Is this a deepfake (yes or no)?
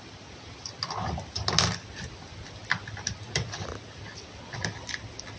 no